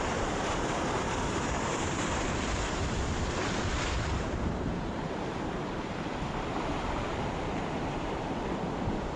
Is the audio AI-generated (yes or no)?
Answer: yes